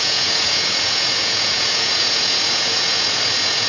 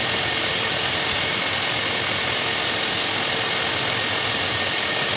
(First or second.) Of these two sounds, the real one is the second